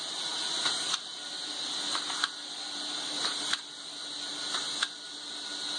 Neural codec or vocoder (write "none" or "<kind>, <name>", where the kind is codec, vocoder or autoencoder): none